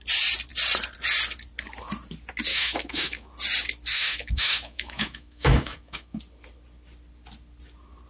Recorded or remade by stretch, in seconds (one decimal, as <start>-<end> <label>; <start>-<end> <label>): 0.0-2.5 recorded; 2.5-3.3 remade; 3.3-3.9 recorded; 3.9-6.2 remade; 6.2-8.1 recorded